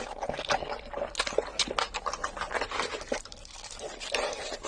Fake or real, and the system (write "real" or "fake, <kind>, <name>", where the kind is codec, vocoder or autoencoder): real